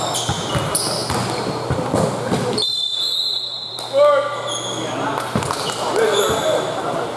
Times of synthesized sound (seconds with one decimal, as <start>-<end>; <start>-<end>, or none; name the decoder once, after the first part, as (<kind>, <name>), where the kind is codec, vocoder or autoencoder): none